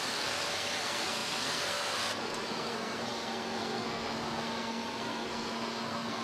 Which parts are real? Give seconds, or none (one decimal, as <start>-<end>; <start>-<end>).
none